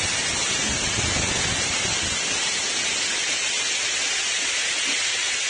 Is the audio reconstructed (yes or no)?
no